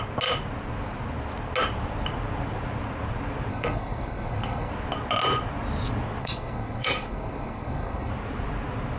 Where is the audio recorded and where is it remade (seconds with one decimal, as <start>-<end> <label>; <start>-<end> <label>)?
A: 0.0-3.5 recorded; 3.5-4.7 remade; 4.7-6.2 recorded; 6.2-8.1 remade; 8.1-9.0 recorded